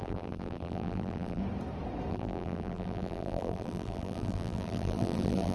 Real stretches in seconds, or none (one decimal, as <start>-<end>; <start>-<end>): 1.4-2.1